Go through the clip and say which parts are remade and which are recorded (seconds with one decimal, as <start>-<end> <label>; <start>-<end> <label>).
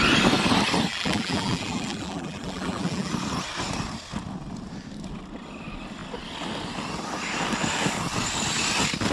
0.0-0.9 recorded; 0.9-3.1 remade; 3.1-9.1 recorded